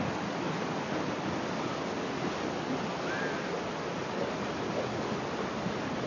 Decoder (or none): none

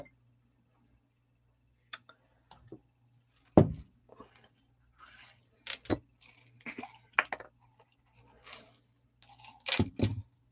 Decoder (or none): none